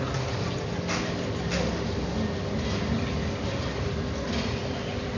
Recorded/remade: recorded